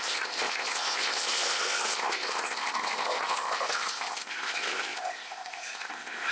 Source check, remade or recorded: remade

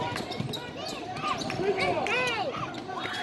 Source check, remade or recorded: recorded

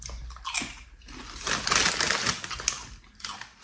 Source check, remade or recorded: recorded